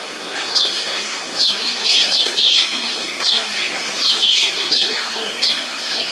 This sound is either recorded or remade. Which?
remade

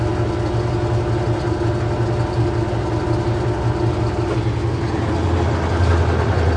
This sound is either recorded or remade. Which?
recorded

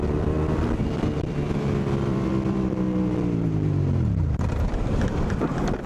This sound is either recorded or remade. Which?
remade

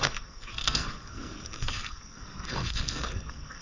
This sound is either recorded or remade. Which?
remade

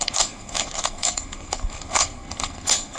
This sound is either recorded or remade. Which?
remade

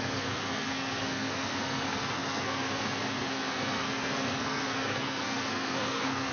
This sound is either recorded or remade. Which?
remade